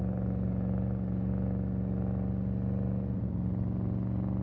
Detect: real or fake real